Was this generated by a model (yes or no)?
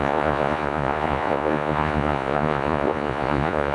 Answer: yes